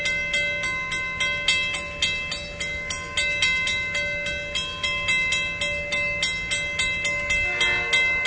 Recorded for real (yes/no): yes